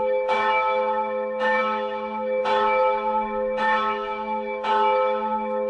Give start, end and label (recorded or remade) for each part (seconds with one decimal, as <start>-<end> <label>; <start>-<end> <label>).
0.0-5.7 remade